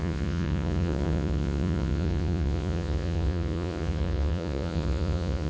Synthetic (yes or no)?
yes